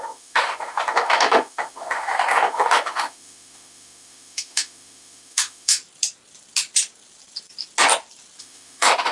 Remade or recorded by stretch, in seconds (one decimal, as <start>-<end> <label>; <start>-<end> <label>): 0.0-5.8 remade; 5.8-8.4 recorded; 8.4-9.1 remade